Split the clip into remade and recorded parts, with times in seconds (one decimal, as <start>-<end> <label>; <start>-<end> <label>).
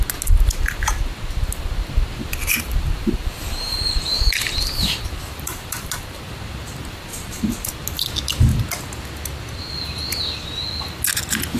0.0-2.4 recorded; 2.4-6.2 remade; 6.2-7.1 recorded; 7.1-7.7 remade; 7.7-11.6 recorded